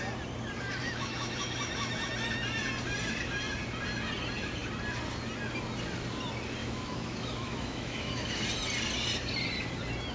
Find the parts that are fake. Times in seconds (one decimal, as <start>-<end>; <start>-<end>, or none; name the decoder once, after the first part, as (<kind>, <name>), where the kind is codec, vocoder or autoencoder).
0.8-2.1 (autoencoder, DAC-VAE); 6.6-8.4